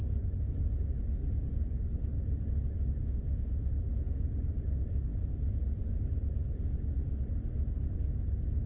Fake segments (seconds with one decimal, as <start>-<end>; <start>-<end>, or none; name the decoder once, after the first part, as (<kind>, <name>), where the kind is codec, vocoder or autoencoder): 3.0-3.7 (autoencoder, DAC-VAE)